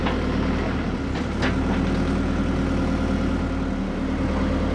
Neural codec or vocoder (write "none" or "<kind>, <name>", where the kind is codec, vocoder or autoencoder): none